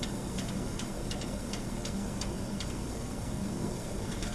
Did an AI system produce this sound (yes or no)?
yes